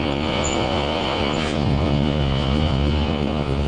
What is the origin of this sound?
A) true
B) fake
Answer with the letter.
B